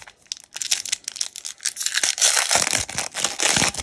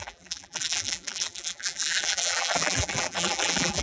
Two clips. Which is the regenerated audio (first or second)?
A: second